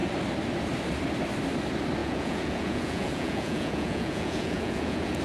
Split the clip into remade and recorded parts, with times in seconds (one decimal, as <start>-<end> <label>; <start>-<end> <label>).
0.0-2.0 recorded; 2.0-5.2 remade